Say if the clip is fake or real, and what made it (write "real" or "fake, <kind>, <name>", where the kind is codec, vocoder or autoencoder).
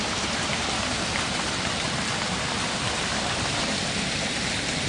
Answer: real